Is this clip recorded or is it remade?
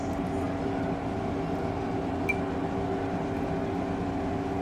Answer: recorded